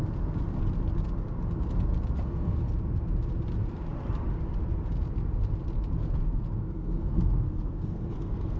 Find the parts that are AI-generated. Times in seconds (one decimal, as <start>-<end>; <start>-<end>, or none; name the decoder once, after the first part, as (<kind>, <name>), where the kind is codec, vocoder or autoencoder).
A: 6.0-8.6 (codec, SNAC)